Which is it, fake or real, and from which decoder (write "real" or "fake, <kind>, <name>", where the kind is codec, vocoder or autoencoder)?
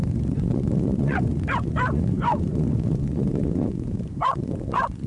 fake, vocoder, Vocos